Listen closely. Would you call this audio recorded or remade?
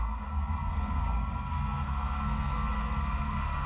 remade